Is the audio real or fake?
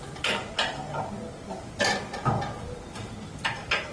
real